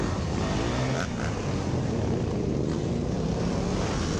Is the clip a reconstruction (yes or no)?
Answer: no